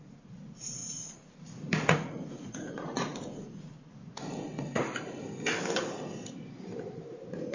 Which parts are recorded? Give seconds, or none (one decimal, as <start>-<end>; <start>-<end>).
4.9-7.5